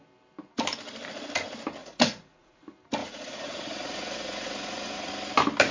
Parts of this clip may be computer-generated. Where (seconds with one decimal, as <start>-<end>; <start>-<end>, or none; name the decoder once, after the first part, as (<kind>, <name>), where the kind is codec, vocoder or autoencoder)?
1.8-2.6 (vocoder, Vocos); 3.0-5.1